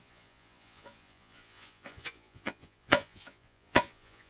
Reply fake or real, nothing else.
fake